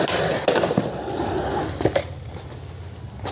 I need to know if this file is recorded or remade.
recorded